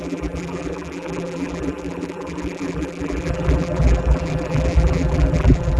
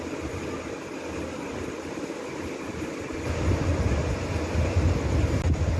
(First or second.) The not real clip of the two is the first